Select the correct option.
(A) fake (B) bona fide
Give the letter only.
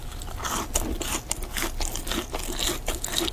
B